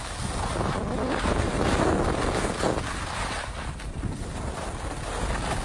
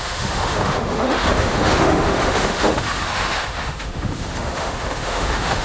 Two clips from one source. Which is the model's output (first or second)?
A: second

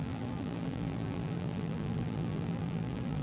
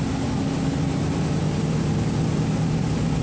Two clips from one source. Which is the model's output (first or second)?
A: first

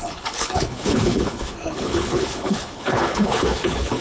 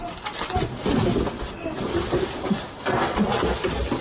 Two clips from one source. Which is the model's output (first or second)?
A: first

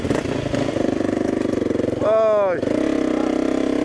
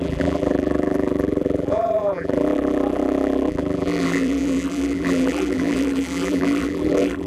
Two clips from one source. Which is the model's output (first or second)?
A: second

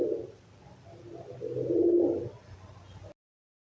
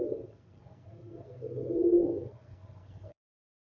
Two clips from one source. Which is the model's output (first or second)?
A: second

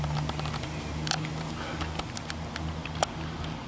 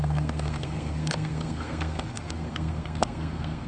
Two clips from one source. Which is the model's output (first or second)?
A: second